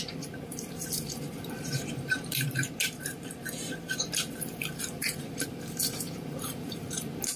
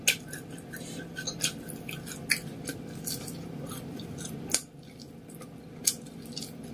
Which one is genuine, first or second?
second